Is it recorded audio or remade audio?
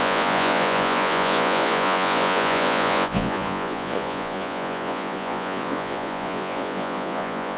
remade